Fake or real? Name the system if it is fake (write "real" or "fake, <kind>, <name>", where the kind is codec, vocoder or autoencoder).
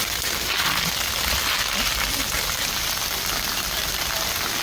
real